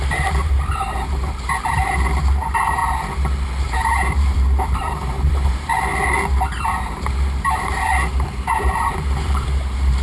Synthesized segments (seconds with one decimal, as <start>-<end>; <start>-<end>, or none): 0.0-2.8; 3.6-5.9; 6.6-10.0